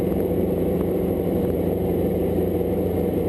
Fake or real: fake